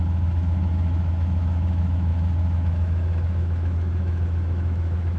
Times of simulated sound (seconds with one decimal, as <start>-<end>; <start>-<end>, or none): 0.0-5.2